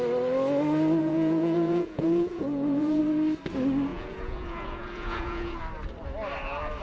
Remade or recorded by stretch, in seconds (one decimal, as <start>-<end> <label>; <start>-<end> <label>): 0.0-1.0 recorded; 1.0-3.0 remade; 3.0-3.9 recorded; 3.9-5.6 remade; 5.6-6.8 recorded